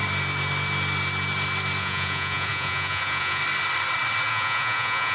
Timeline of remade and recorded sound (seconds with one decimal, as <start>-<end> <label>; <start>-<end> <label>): 0.0-1.8 recorded; 1.8-3.4 remade; 3.4-4.3 recorded; 4.3-5.1 remade